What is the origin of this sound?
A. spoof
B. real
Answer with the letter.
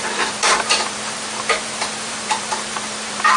A